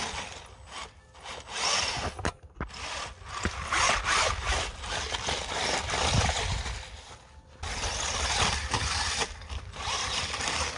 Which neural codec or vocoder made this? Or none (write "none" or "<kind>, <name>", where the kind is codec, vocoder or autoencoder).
none